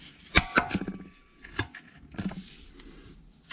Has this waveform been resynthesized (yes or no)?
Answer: no